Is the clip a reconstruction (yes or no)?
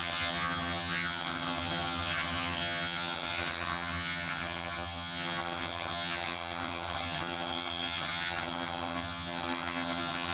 yes